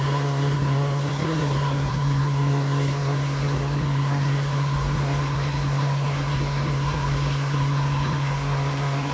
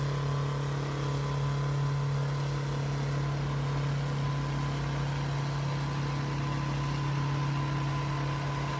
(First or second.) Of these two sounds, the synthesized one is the first